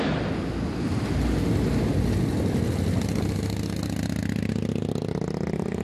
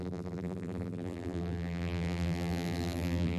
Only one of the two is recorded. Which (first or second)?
first